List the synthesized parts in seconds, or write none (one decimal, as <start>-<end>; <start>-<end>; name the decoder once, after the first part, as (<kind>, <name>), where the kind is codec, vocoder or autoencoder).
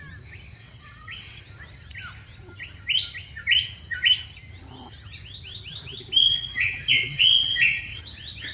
0.6-1.4 (vocoder, WaveNeXt); 6.2-8.0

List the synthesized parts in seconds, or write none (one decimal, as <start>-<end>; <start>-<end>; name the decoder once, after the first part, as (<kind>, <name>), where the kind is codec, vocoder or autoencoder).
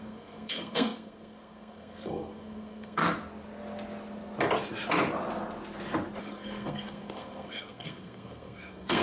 0.0-3.0 (codec, SNAC); 6.2-9.0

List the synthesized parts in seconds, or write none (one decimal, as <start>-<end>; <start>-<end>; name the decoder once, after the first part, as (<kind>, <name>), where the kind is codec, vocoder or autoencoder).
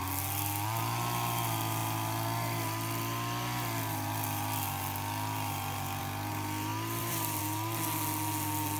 6.7-7.4 (vocoder, BigVGAN v2)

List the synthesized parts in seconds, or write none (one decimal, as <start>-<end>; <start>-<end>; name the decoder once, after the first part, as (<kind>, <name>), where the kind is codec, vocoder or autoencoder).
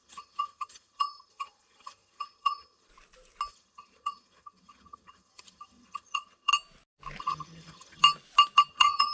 0.0-2.9 (vocoder, HiFi-GAN); 3.5-6.5; 7.2-8.0; 8.7-9.1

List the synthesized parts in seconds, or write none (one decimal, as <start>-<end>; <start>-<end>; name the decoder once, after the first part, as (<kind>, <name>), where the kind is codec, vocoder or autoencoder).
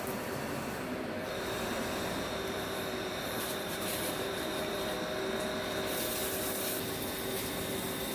1.2-4.9 (vocoder, BigVGAN v2)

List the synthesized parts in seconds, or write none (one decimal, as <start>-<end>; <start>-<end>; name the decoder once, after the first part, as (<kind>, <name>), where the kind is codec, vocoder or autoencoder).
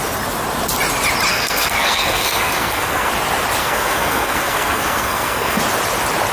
1.3-3.1 (codec, SNAC); 3.6-5.6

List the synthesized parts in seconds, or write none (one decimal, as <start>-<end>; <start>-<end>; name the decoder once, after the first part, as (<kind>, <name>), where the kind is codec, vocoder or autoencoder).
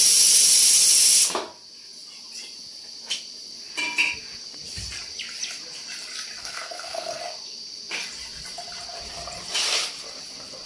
6.4-7.2 (codec, SNAC)